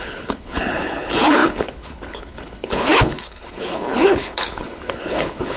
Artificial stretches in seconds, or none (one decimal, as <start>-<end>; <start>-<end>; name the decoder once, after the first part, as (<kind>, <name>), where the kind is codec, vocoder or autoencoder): 0.0-5.6 (codec, HILCodec)